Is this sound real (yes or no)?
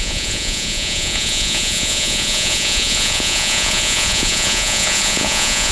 no